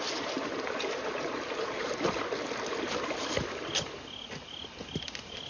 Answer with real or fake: real